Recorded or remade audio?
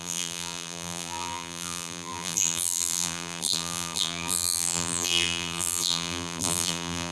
remade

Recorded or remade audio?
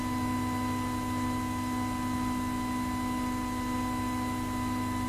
recorded